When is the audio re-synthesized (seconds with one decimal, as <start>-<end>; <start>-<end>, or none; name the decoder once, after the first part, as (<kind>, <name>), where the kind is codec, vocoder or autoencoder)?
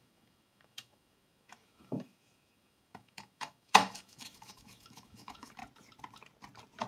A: 0.0-5.6 (autoencoder, DAC-VAE)